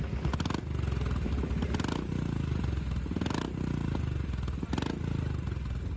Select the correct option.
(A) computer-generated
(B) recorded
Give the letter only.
B